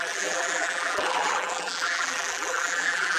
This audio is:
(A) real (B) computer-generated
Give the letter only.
B